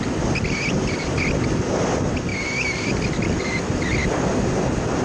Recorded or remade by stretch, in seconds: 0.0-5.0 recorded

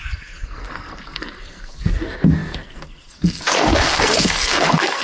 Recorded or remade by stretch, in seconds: 0.0-5.0 remade

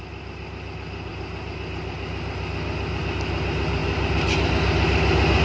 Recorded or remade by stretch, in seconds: 0.0-5.4 recorded

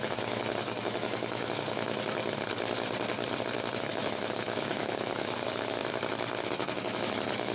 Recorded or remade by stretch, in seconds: 0.0-2.2 remade; 2.2-3.8 recorded; 3.8-5.8 remade; 5.8-6.5 recorded; 6.5-7.5 remade

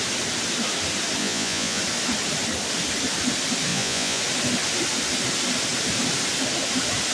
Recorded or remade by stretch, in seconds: 0.0-1.2 recorded; 1.2-1.8 remade; 1.8-3.7 recorded; 3.7-4.2 remade; 4.2-7.1 recorded

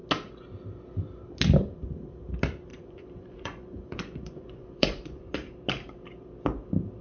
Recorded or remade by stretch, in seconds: 0.0-2.7 recorded; 2.7-5.3 remade; 5.3-7.0 recorded

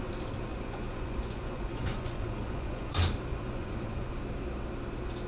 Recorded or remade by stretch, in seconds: 0.0-0.5 recorded; 0.5-2.9 remade; 2.9-3.3 recorded; 3.3-4.2 remade; 4.2-5.3 recorded